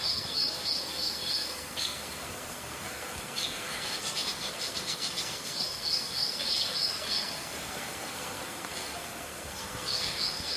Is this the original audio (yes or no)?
no